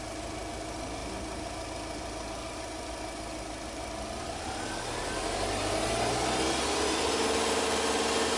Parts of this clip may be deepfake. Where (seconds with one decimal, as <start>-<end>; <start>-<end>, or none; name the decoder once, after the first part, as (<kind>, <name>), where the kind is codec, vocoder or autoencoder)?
none